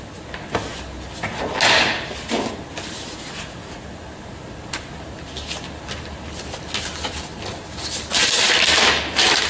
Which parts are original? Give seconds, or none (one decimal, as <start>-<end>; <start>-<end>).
0.0-9.5

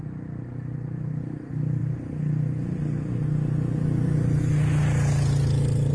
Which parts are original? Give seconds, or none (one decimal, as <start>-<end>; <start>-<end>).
0.0-5.9

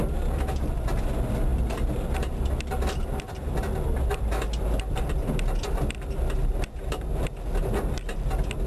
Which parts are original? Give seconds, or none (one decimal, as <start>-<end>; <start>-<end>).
0.0-8.7